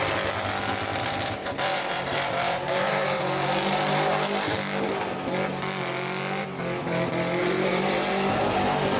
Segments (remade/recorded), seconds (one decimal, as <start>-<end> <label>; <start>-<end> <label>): 0.0-0.9 recorded; 0.9-3.2 remade; 3.2-7.4 recorded; 7.4-8.4 remade; 8.4-9.0 recorded

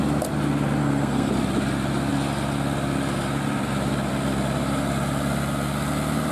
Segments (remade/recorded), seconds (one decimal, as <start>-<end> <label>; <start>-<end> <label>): 0.0-0.8 recorded; 0.8-1.3 remade; 1.3-6.3 recorded

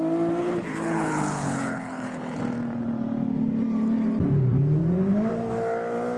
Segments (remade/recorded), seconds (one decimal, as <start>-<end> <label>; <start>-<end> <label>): 0.0-0.4 recorded; 0.4-2.4 remade; 2.4-6.2 recorded